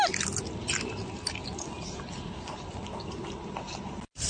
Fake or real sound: real